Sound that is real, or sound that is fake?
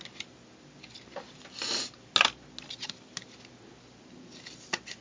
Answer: real